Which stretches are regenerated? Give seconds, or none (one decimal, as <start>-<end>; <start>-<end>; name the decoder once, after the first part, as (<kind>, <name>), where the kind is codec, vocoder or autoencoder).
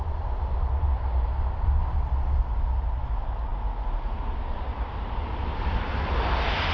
none